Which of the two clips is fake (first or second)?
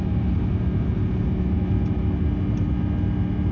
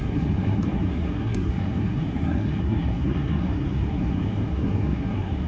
second